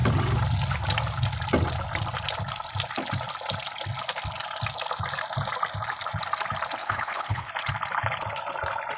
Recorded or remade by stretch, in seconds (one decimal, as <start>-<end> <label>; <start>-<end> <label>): 0.0-6.8 recorded; 6.8-7.5 remade; 7.5-9.0 recorded